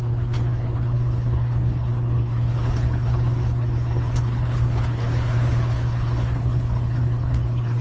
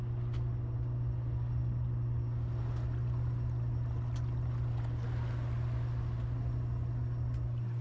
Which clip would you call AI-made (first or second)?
first